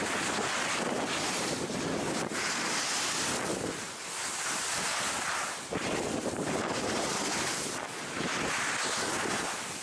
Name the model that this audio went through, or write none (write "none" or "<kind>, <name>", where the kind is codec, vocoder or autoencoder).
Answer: none